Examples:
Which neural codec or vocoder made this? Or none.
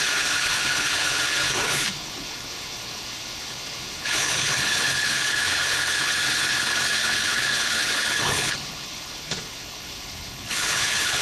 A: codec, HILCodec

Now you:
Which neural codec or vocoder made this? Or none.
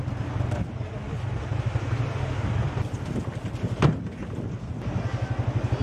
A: none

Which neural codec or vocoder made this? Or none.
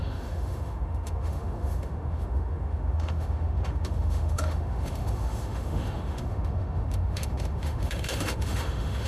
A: autoencoder, DAC-VAE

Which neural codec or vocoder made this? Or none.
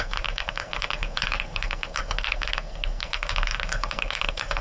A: codec, SNAC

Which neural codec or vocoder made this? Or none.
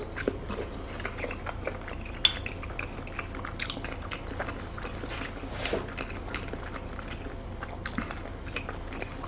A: none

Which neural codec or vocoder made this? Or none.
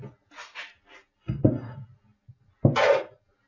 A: none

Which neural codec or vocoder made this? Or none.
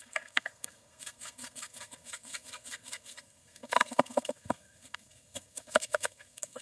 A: codec, SNAC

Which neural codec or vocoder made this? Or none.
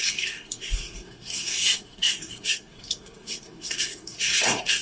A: codec, SNAC